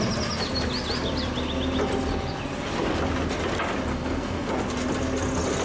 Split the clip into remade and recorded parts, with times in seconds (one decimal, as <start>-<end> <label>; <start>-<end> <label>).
0.0-3.9 recorded; 3.9-4.5 remade; 4.5-5.6 recorded